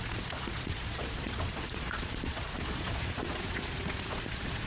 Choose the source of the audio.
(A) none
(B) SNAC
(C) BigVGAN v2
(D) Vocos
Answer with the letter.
D